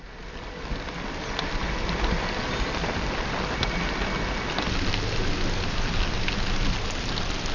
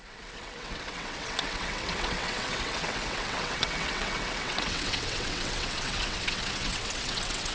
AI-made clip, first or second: second